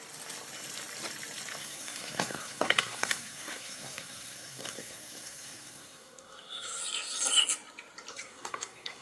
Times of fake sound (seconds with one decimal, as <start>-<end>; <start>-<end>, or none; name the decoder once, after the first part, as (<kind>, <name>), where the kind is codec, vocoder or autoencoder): 1.6-6.8 (codec, SNAC); 8.1-9.0